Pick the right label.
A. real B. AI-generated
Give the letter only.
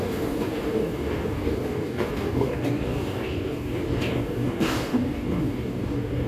B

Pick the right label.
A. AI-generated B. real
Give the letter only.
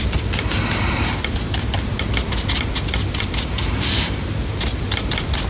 B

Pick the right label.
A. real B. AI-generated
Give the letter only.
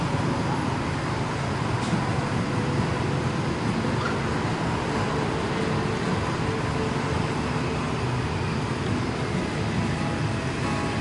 A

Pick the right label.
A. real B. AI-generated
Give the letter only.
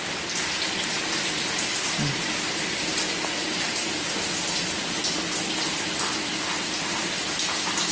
A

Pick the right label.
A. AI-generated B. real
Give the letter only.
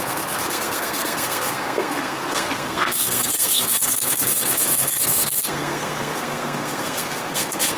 A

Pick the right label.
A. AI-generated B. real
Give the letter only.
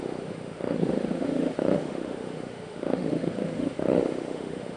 A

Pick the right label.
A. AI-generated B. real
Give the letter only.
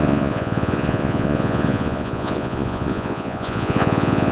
A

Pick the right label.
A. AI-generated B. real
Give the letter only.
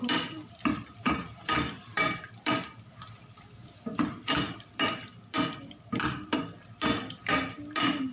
A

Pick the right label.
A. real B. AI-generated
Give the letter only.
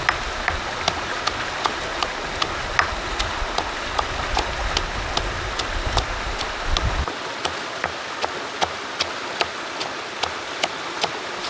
A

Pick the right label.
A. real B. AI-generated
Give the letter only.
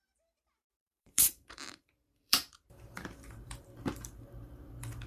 B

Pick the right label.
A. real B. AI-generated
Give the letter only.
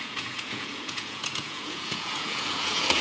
B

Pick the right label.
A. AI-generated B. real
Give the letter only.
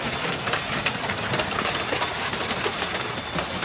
B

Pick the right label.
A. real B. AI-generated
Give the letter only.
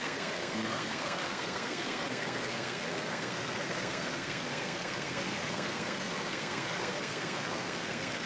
B